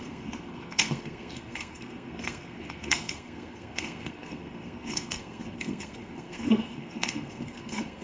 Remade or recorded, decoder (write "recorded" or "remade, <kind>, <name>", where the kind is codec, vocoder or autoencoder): remade, codec, SNAC